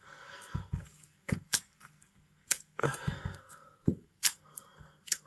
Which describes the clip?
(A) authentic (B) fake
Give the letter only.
B